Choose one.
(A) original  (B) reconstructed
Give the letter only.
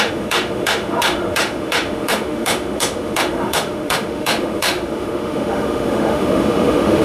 B